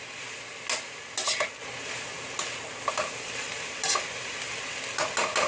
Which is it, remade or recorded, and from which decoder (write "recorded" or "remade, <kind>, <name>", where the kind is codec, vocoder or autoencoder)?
recorded